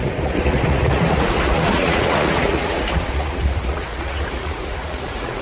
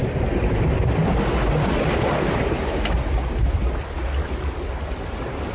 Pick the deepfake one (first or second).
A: first